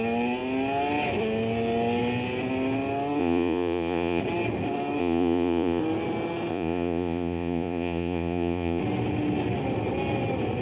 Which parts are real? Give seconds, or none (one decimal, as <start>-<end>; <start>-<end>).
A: 0.0-3.2; 4.2-5.0; 5.8-6.5; 8.8-10.6